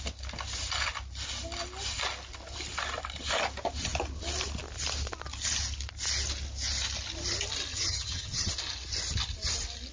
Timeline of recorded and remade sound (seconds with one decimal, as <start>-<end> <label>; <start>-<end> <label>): 0.0-7.7 recorded; 7.7-8.5 remade; 8.5-9.9 recorded

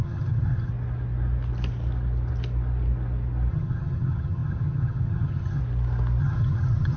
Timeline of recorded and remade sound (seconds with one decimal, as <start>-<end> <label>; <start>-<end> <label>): 0.0-0.7 remade; 0.7-3.5 recorded; 3.5-5.6 remade; 5.6-6.2 recorded; 6.2-7.0 remade